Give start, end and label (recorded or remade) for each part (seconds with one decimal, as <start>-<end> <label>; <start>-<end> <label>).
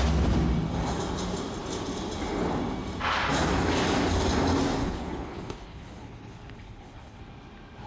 0.0-4.8 recorded; 4.8-7.2 remade; 7.2-7.9 recorded